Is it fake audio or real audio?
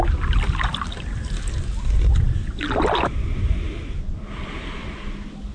real